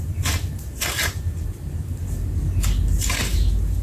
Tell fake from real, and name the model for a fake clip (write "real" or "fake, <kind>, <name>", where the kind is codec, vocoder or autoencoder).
real